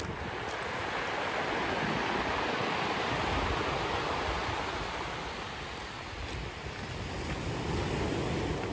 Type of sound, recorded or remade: recorded